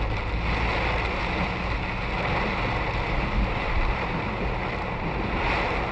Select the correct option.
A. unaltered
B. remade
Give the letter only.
A